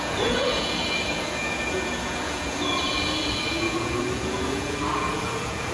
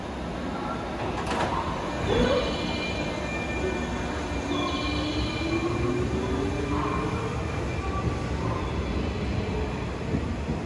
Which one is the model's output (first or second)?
first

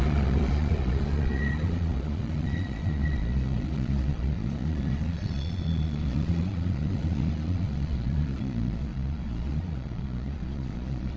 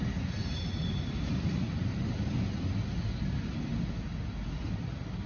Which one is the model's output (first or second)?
first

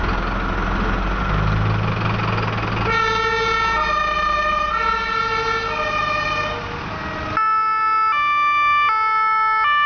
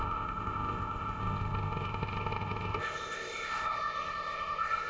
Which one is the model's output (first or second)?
second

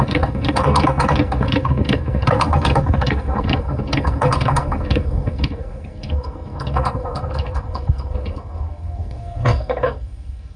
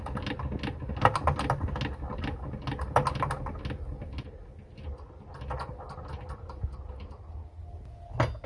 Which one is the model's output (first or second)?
first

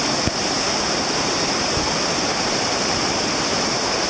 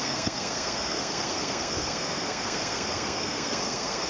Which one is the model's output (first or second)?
second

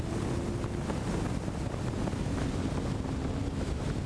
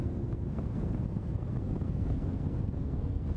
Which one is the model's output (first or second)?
second